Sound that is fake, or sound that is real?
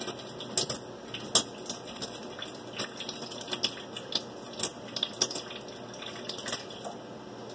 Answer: real